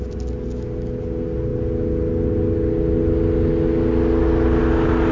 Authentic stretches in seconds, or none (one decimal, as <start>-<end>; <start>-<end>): 0.0-5.1